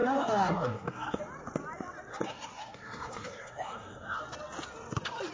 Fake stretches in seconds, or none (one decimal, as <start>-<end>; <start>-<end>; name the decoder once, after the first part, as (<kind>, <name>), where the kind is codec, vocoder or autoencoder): 0.0-1.2 (codec, SNAC); 2.1-4.2